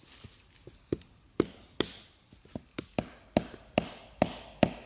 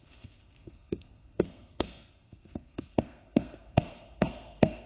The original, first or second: first